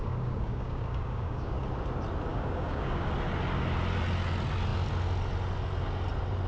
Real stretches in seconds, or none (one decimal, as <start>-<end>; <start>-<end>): 1.6-2.3; 3.1-6.5